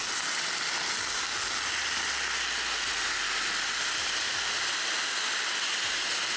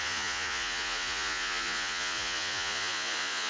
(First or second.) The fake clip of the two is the second